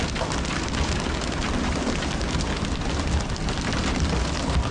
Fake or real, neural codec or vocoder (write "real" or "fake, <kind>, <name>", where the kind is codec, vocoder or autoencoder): real